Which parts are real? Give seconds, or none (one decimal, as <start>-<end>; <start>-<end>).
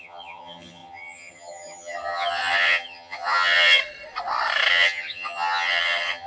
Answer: 3.8-4.7